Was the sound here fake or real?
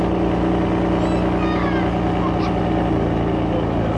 real